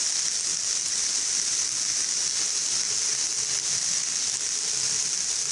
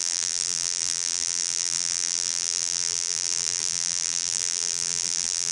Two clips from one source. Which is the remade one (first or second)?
second